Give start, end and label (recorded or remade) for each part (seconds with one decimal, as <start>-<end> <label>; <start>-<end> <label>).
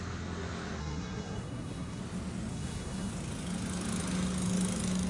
0.0-0.8 recorded; 0.8-2.0 remade; 2.0-2.5 recorded; 2.5-3.1 remade; 3.1-5.1 recorded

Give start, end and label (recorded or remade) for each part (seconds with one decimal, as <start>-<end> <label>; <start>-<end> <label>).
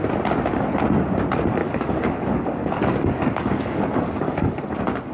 0.0-1.6 recorded; 1.6-4.6 remade; 4.6-5.1 recorded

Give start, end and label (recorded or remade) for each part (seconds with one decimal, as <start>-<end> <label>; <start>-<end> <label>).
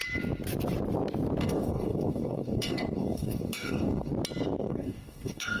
0.0-1.4 recorded; 1.4-4.1 remade; 4.1-4.6 recorded; 4.6-5.6 remade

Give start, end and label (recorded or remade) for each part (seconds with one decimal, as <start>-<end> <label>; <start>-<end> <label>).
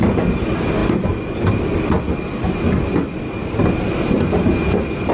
0.0-5.1 recorded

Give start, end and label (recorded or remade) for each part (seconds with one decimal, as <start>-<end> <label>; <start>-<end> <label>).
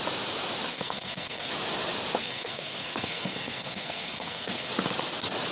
0.0-0.7 recorded; 0.7-1.5 remade; 1.5-2.2 recorded; 2.2-4.7 remade; 4.7-5.5 recorded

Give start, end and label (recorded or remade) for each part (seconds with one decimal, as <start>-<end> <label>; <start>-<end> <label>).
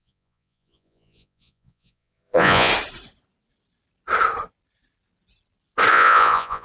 0.0-2.7 remade; 2.7-5.9 recorded; 5.9-6.6 remade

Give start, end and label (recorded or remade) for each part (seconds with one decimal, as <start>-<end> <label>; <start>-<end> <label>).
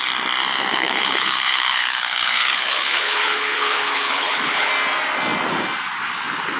0.0-0.7 recorded; 0.7-4.7 remade; 4.7-6.6 recorded